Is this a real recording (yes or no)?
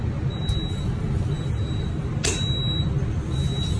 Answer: yes